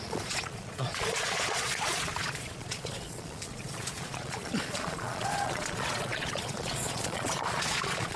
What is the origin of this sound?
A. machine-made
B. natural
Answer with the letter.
A